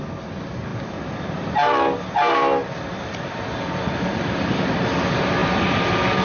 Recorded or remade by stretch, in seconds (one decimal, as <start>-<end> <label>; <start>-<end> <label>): 0.0-6.2 recorded